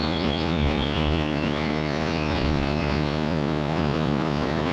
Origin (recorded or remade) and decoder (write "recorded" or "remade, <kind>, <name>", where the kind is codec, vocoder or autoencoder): remade, vocoder, Vocos